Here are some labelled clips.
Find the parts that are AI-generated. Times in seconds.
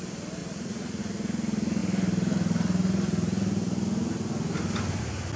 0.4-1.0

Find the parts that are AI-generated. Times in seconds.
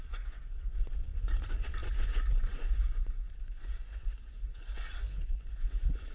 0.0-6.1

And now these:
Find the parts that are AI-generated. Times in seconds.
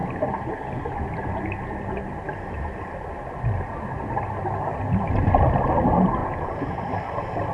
6.2-6.8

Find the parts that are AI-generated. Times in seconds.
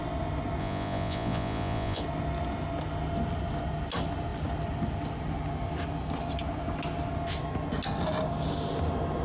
0.6-2.0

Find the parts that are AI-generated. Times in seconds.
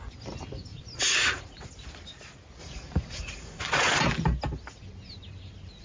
0.7-1.7; 2.6-4.0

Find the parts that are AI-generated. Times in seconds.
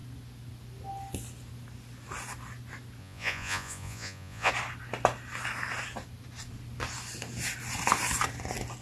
3.0-4.5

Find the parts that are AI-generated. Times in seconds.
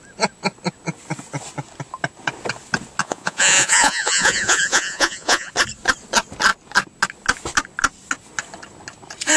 3.0-5.5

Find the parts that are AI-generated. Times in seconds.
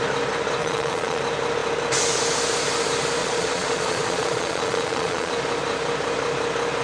0.6-1.2; 3.2-5.3